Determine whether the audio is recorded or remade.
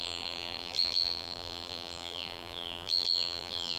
remade